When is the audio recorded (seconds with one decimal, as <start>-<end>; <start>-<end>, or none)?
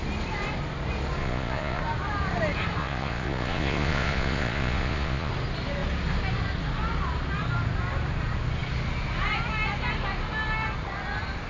0.0-1.2; 1.8-2.8; 5.3-11.5